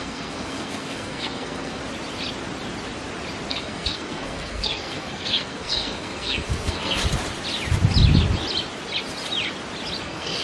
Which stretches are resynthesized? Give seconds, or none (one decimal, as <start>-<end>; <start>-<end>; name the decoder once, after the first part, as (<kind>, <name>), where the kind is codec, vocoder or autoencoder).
0.0-1.8 (codec, SNAC); 3.5-7.0; 10.0-10.4